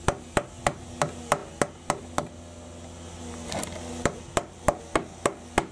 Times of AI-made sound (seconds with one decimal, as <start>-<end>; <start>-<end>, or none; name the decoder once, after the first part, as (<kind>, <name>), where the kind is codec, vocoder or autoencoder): none